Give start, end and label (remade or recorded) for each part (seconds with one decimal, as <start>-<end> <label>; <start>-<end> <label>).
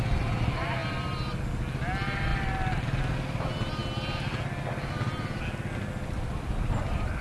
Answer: 0.0-7.2 recorded